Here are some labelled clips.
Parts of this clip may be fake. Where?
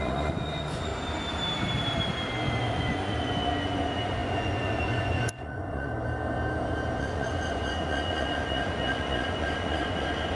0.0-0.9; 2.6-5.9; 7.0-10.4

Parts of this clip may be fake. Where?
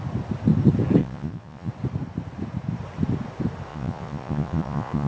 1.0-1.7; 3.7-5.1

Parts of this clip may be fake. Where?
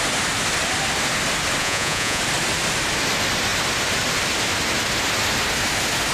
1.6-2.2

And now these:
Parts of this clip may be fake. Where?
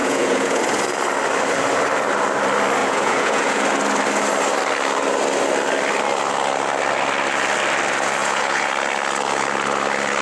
0.0-0.6; 2.8-3.6; 8.2-8.7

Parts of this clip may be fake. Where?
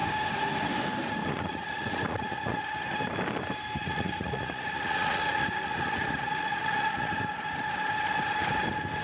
1.2-2.6; 3.8-7.2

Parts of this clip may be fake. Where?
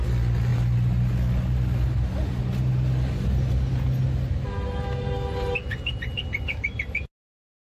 none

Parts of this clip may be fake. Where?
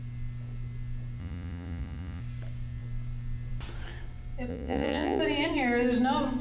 1.2-2.2; 4.5-5.2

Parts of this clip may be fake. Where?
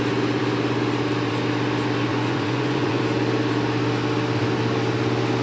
2.1-3.0